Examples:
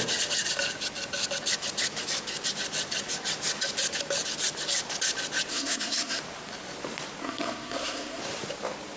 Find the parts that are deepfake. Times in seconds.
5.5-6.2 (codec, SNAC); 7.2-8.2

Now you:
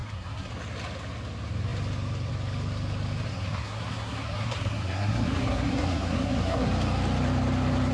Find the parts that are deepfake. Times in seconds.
0.0-0.5 (codec, SNAC); 3.3-6.7